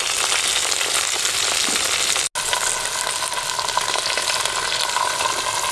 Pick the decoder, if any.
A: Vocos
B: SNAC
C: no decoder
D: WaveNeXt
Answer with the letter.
C